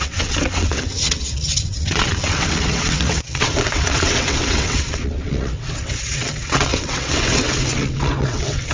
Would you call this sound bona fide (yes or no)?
no